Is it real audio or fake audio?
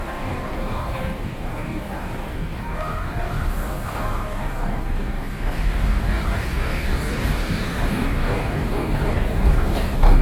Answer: fake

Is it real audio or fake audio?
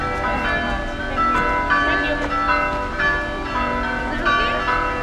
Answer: real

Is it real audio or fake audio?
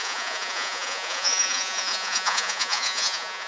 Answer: fake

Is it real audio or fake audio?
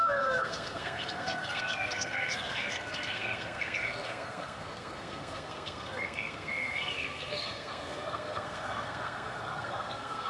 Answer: fake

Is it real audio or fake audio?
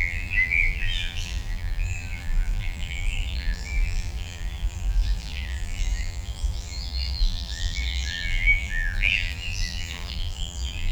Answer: fake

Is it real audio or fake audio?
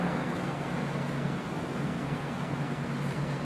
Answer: fake